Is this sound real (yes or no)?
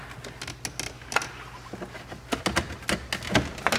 yes